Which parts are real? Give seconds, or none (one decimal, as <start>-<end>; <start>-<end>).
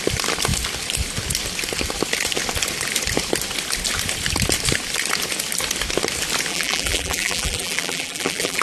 0.0-6.5